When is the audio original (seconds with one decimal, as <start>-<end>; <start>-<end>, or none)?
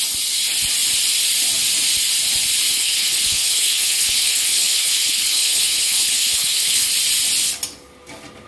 0.0-2.7; 6.9-8.5